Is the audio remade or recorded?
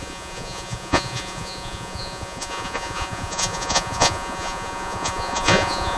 remade